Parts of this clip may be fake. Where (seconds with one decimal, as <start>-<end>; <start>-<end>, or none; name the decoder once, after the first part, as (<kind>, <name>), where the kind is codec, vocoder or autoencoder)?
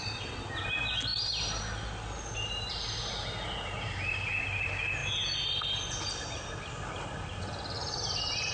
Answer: none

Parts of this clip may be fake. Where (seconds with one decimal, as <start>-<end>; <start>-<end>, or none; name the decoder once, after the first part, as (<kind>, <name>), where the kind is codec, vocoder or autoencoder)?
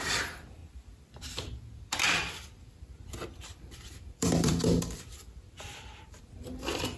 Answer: 0.0-7.0 (vocoder, BigVGAN v2)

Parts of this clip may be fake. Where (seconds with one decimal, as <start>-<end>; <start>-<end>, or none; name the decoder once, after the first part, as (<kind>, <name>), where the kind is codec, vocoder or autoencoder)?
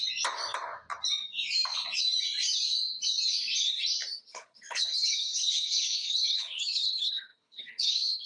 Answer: 4.3-8.3 (codec, HILCodec)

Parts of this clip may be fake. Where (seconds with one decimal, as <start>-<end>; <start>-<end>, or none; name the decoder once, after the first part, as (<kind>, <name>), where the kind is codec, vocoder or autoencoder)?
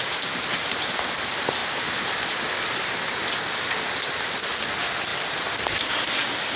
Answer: 5.1-6.0 (vocoder, BigVGAN v2)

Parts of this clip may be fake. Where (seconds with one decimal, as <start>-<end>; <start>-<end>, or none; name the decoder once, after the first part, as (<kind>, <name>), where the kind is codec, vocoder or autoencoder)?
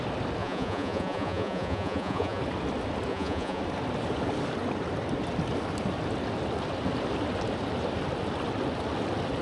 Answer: 0.4-2.4 (vocoder, Vocos); 3.1-3.6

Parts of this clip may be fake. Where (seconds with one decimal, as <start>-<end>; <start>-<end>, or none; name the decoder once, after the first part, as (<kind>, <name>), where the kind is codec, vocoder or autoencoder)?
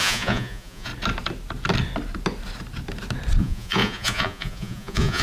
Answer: 0.0-0.9 (vocoder, Vocos); 3.4-5.2